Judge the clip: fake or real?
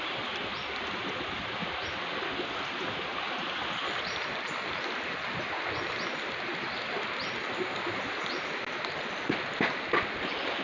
real